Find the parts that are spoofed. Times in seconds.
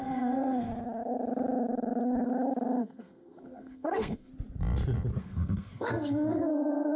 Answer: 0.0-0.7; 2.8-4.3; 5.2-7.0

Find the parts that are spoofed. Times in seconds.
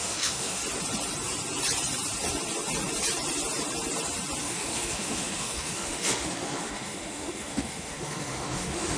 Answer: 0.0-0.6; 4.4-9.0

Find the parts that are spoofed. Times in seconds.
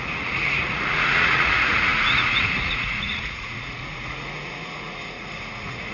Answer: 0.0-5.9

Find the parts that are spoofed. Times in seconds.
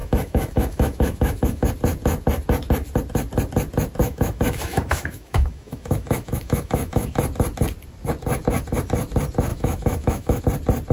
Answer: 0.0-1.7; 4.0-7.2; 9.5-10.4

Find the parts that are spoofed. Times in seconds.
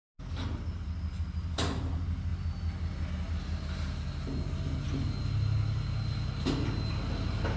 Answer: none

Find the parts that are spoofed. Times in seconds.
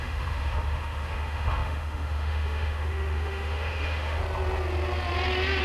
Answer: 0.0-4.2